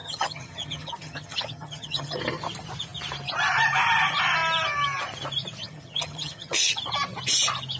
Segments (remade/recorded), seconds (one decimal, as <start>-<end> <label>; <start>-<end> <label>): 0.0-2.2 remade; 2.2-5.6 recorded; 5.6-6.8 remade; 6.8-7.8 recorded